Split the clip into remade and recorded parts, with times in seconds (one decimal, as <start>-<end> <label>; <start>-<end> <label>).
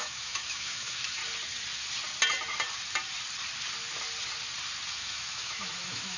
0.0-1.2 remade; 1.2-4.9 recorded; 4.9-6.2 remade